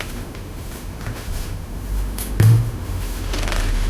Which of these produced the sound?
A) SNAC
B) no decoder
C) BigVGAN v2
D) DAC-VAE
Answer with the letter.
D